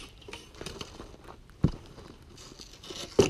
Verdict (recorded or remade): recorded